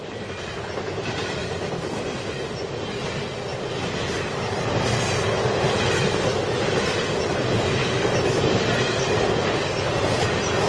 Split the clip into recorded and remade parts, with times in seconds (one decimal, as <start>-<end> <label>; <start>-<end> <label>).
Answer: 0.0-10.7 recorded